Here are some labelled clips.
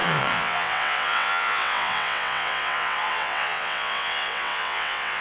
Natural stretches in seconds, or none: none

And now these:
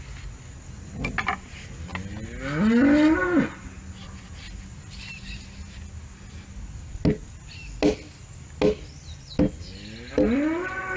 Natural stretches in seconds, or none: 0.0-11.0

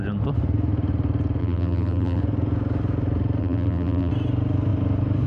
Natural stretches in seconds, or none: 0.0-1.4; 2.2-3.4; 4.1-5.3